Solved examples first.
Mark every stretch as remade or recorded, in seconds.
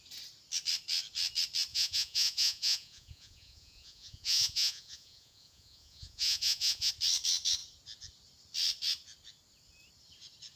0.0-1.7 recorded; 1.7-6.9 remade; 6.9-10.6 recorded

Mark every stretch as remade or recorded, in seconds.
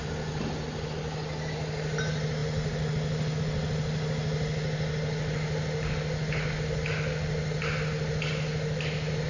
0.0-9.3 recorded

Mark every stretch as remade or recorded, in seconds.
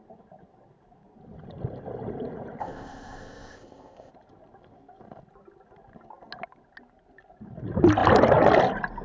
0.0-2.6 recorded; 2.6-4.1 remade; 4.1-9.0 recorded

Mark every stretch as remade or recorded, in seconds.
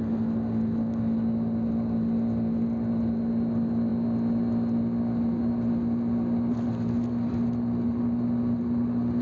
0.0-9.2 recorded